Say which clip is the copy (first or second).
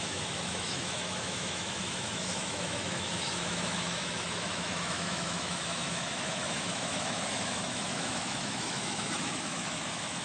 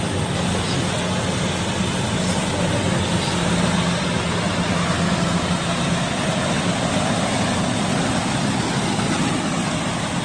first